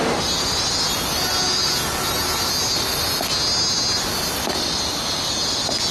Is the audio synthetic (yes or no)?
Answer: no